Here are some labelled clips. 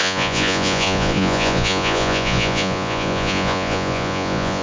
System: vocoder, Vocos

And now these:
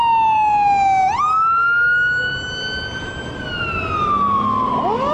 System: none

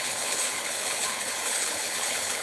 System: codec, HILCodec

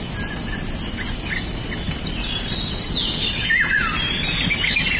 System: none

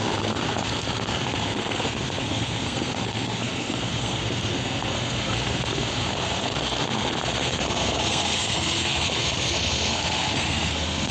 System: codec, SNAC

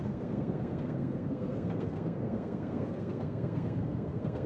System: codec, SNAC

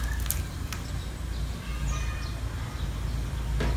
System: none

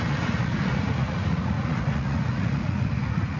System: vocoder, Vocos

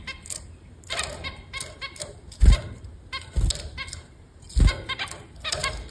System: none